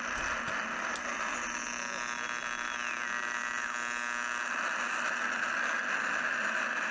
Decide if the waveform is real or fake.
real